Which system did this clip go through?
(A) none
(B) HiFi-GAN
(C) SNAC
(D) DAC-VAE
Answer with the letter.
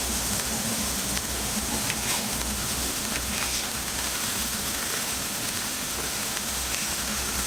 D